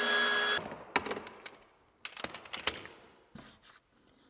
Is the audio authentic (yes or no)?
yes